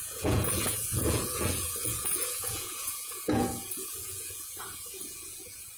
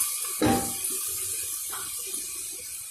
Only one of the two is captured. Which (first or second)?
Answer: second